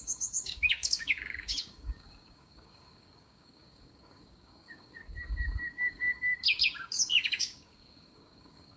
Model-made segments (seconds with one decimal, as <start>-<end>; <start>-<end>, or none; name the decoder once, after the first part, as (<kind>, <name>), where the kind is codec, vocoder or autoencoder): 0.0-5.0 (codec, DAC); 5.7-8.8